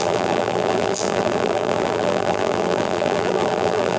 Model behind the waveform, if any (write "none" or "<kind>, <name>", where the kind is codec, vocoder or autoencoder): vocoder, BigVGAN v2